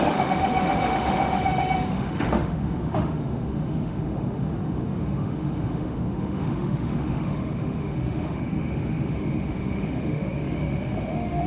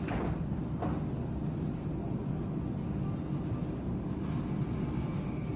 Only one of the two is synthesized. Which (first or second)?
first